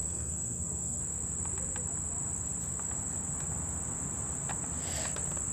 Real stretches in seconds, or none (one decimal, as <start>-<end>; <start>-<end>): 1.0-5.5